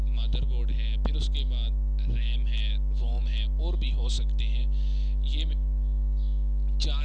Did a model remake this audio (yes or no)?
no